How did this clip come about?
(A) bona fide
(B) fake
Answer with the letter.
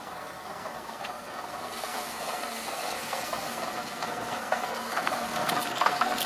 B